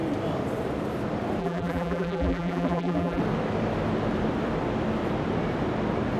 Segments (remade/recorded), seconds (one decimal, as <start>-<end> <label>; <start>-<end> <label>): 0.0-1.4 recorded; 1.4-3.2 remade; 3.2-6.2 recorded

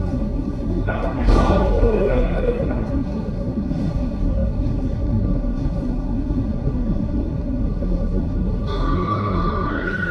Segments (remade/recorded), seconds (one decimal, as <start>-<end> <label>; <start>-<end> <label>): 0.0-10.1 remade

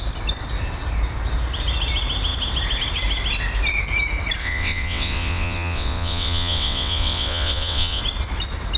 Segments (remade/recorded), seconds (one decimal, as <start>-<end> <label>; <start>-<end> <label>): 0.0-4.4 recorded; 4.4-8.0 remade; 8.0-8.8 recorded